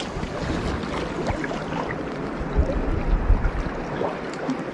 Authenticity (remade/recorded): recorded